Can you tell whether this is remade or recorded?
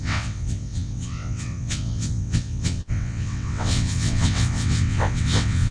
remade